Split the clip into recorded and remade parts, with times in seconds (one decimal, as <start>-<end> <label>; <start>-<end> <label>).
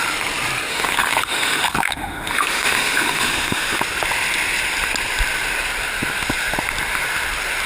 0.0-0.7 recorded; 0.7-3.8 remade; 3.8-7.7 recorded